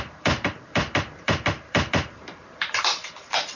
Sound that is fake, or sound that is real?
fake